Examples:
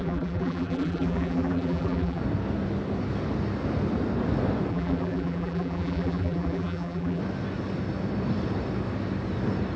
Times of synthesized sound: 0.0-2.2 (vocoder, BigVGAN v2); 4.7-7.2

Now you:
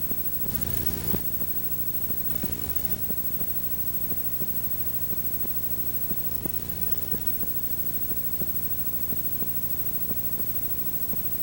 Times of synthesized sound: 0.5-1.2 (codec, SNAC); 2.3-3.0; 6.3-7.3

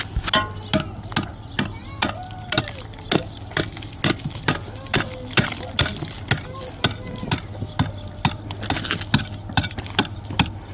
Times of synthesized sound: none

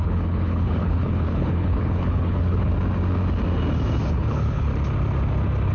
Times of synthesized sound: 0.0-2.7 (codec, HILCodec); 4.1-4.7

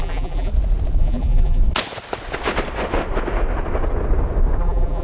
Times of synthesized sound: 0.0-0.5 (vocoder, BigVGAN v2); 1.0-1.6; 4.6-5.0

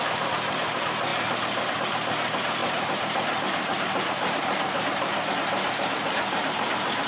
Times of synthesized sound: 2.6-5.3 (vocoder, BigVGAN v2)